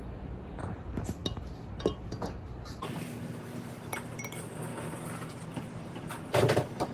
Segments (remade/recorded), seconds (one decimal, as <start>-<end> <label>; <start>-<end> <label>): 0.0-1.2 remade; 1.2-2.8 recorded; 2.8-6.9 remade